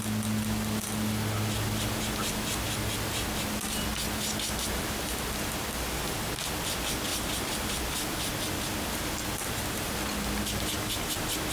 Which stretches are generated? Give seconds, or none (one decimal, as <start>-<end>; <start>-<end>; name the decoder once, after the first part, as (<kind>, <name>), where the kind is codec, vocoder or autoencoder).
7.1-8.3 (vocoder, BigVGAN v2)